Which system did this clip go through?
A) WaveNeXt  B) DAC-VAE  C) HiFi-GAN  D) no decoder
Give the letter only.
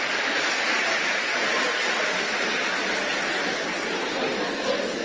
D